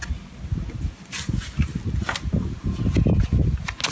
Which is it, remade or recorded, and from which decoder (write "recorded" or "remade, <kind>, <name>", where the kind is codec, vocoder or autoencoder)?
recorded